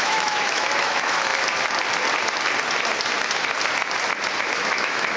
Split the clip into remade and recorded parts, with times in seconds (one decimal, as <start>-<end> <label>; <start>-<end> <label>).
0.0-1.3 remade; 1.3-4.4 recorded; 4.4-5.2 remade